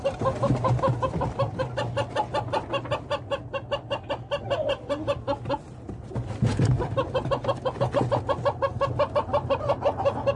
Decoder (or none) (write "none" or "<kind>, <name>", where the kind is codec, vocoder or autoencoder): none